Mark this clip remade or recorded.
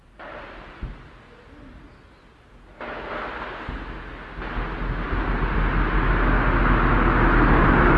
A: recorded